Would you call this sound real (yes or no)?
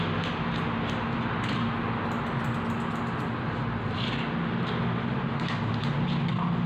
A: yes